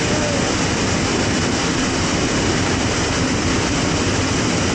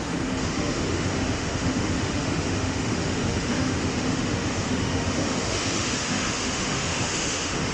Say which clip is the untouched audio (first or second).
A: first